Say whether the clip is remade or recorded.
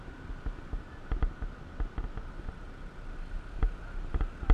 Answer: recorded